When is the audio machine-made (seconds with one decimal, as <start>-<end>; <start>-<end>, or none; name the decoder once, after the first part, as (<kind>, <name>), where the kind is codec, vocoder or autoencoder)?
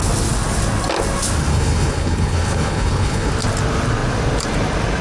1.5-3.3 (codec, HILCodec)